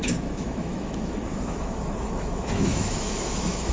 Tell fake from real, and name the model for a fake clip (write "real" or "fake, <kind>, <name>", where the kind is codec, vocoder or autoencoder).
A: fake, autoencoder, DAC-VAE